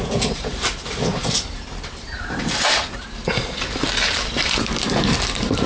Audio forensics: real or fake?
fake